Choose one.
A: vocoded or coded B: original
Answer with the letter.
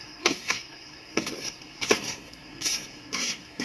A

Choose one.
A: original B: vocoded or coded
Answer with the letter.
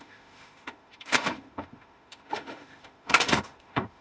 B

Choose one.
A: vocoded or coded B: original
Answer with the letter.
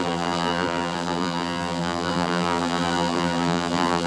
A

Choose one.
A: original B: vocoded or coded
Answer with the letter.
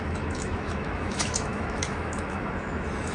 B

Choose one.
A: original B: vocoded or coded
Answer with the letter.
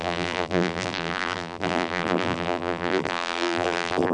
B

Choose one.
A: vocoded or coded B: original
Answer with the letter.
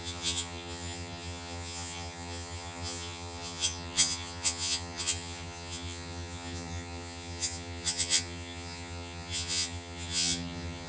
A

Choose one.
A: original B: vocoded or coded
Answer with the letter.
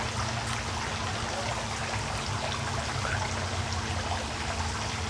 A